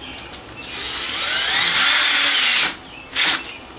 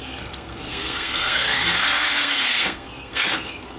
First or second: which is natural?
first